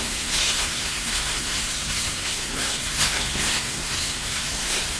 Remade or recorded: remade